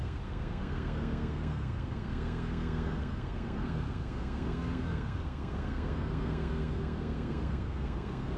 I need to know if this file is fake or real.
fake